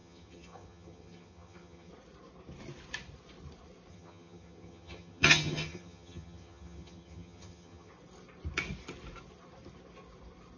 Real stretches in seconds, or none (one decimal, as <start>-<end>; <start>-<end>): 1.9-3.9; 7.9-10.6